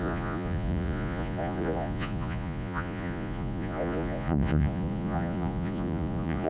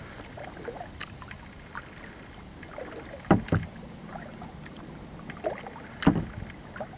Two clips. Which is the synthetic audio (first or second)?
first